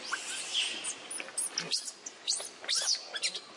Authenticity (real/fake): real